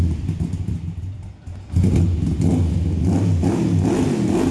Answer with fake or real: real